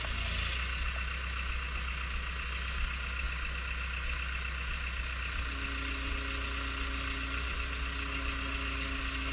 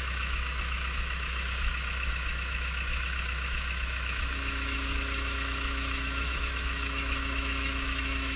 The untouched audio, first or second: first